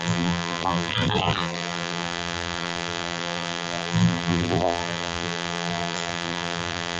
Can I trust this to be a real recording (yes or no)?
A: no